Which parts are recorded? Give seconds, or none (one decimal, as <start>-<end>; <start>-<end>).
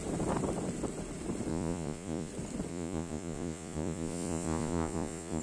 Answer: 0.0-1.5; 2.3-2.7